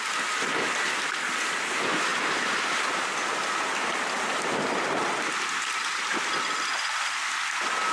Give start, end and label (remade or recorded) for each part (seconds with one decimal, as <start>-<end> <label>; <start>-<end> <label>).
0.0-2.1 recorded; 2.1-6.3 remade; 6.3-7.9 recorded